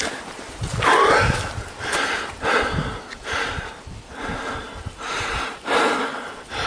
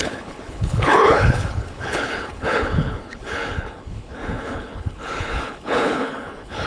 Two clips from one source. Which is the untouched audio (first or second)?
first